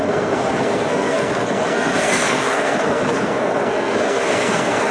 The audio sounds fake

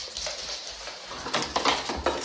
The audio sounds real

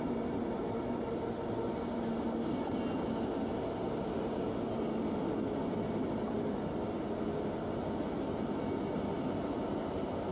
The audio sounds real